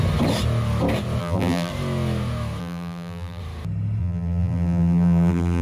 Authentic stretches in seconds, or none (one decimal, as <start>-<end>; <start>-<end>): 0.0-1.2; 1.7-2.6; 3.4-4.0